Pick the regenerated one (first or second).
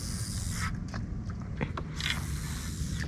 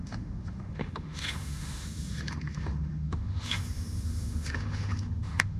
second